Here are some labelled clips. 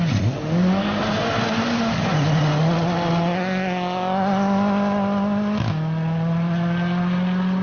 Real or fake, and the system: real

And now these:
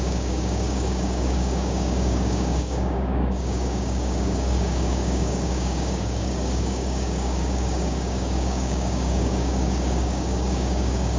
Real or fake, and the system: fake, codec, DAC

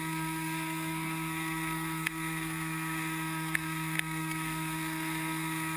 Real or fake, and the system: fake, codec, SNAC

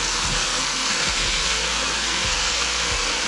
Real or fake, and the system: fake, codec, SNAC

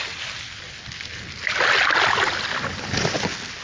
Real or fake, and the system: real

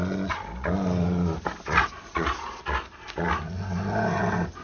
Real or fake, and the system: real